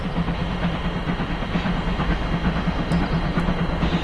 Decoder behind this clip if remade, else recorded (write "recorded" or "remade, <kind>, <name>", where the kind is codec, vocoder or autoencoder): recorded